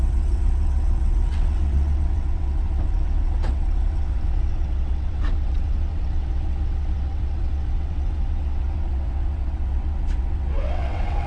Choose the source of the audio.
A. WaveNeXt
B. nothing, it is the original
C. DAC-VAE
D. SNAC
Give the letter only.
A